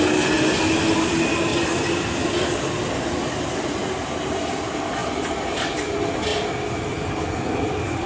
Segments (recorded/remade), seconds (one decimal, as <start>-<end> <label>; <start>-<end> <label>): 0.0-8.1 recorded